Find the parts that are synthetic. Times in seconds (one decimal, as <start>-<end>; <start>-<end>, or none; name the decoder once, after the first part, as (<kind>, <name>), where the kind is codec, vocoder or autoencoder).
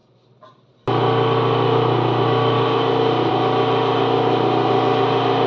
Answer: none